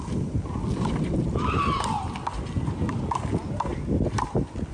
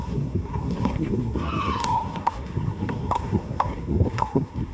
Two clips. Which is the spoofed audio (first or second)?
second